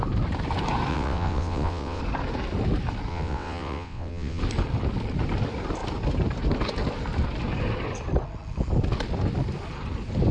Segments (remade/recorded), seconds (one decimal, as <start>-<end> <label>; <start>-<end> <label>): 0.0-0.9 recorded; 0.9-2.0 remade; 2.0-3.1 recorded; 3.1-4.4 remade; 4.4-10.3 recorded